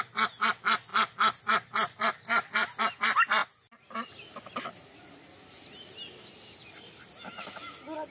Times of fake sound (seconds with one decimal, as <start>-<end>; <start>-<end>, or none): none